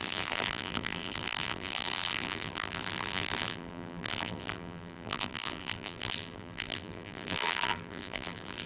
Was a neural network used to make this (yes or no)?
yes